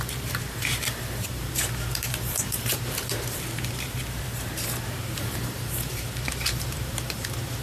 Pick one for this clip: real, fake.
fake